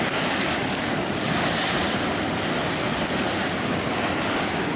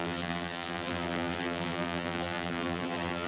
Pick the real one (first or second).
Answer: first